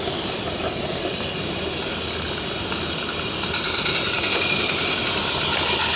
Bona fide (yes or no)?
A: yes